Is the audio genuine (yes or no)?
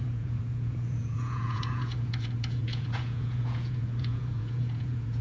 no